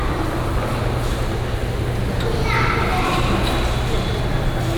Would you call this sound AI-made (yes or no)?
no